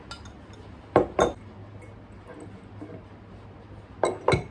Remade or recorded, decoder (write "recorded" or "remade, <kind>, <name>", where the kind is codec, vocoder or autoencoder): recorded